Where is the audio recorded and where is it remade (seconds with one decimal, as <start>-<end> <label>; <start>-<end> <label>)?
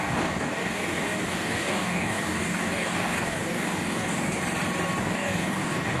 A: 0.0-4.4 remade; 4.4-5.0 recorded; 5.0-6.0 remade